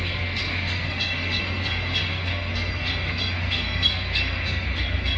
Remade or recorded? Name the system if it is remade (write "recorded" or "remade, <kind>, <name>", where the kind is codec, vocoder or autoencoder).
remade, codec, SNAC